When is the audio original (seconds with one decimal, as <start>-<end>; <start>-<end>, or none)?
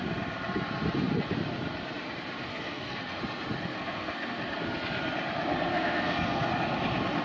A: 0.0-2.5; 3.2-3.7; 4.4-5.7; 6.5-7.2